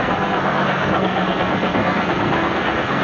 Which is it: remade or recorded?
remade